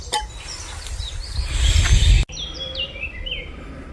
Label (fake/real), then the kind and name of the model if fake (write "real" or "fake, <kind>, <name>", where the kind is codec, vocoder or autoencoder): real